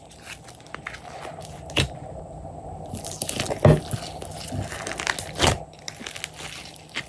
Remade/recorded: recorded